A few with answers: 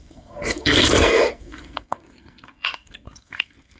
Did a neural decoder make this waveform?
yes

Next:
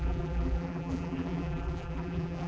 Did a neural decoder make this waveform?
yes